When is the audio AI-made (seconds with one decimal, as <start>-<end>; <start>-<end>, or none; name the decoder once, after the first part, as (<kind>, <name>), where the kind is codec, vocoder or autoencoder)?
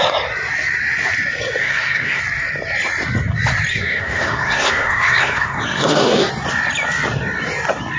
1.6-2.2 (codec, SNAC); 3.7-6.3